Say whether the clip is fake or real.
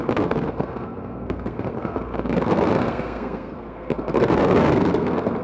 fake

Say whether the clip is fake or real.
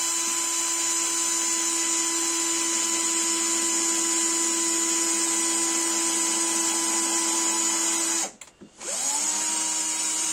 real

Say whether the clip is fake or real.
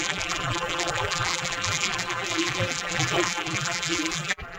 fake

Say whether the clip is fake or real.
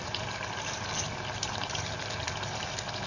real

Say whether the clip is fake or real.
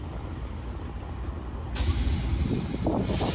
real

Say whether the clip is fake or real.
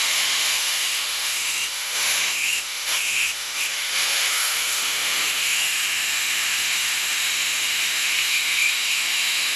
fake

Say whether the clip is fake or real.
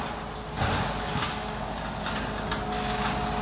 real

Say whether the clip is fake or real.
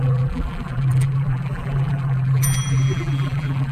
fake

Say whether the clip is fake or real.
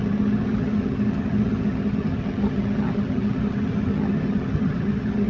fake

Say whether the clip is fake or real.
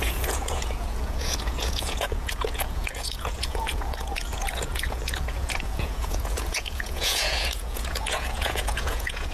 fake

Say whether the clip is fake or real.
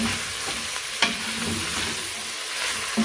real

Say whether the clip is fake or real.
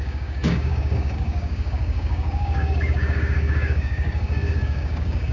fake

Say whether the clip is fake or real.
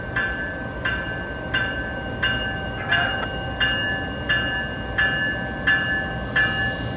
real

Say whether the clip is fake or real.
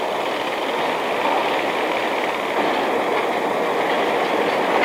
real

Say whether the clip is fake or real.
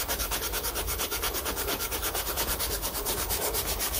fake